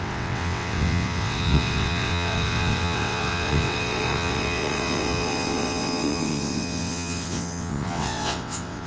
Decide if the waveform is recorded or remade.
remade